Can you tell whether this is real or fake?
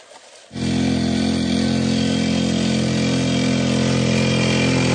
real